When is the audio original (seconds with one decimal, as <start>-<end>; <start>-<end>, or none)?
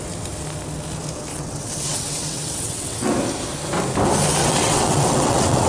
0.0-1.3; 3.1-4.4